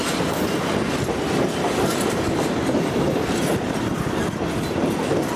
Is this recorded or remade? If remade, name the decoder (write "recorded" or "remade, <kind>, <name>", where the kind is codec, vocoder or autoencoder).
recorded